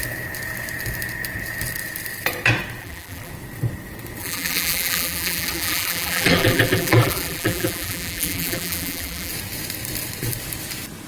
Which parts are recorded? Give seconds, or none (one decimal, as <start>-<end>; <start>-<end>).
0.0-2.8; 3.3-4.2; 9.3-11.1